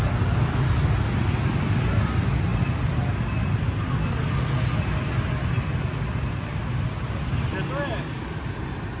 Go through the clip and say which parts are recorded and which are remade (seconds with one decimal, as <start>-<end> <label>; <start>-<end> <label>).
0.0-9.0 recorded